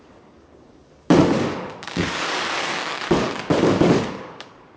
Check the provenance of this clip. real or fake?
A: fake